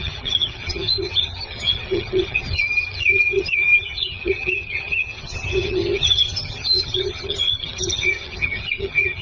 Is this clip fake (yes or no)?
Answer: yes